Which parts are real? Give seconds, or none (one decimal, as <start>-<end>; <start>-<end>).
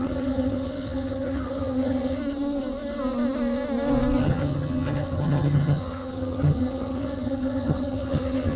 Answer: 2.2-4.2